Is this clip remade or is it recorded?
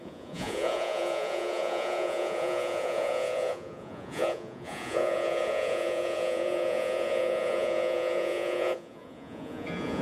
remade